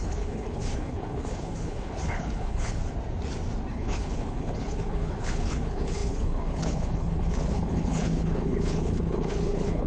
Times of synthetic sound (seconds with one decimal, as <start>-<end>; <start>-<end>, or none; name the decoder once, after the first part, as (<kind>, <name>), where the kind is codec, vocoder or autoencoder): 0.0-2.8 (codec, HILCodec); 3.7-9.9